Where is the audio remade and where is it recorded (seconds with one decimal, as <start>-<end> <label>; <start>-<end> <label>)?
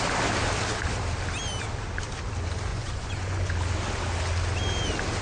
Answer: 0.0-2.7 recorded; 2.7-3.5 remade; 3.5-5.2 recorded